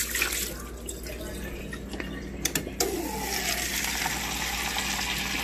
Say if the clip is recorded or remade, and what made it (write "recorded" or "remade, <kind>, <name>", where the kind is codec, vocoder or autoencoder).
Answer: recorded